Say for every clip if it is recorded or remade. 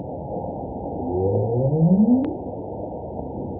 recorded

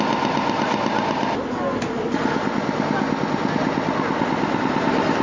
recorded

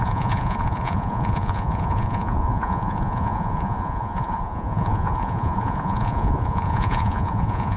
remade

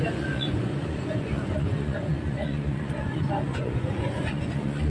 remade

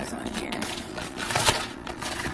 remade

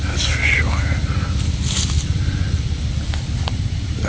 recorded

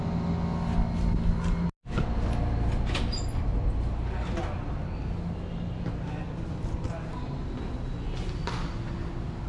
recorded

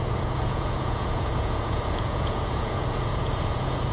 remade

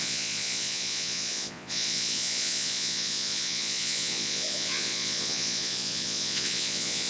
remade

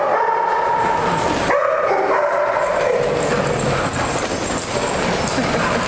recorded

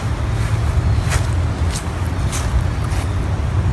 recorded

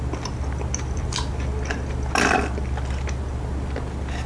recorded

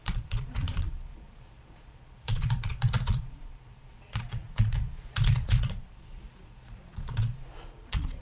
remade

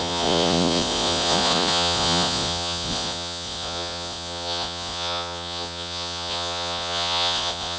remade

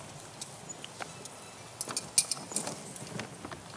recorded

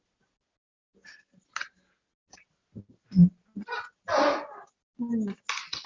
recorded